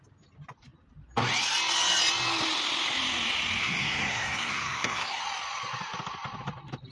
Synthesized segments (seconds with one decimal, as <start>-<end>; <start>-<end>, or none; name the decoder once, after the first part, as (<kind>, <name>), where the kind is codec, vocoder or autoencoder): 3.6-5.2 (codec, SNAC)